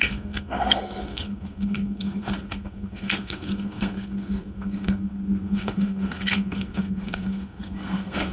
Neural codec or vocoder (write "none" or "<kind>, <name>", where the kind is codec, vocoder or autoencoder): codec, SNAC